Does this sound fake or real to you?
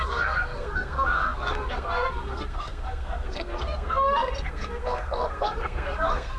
fake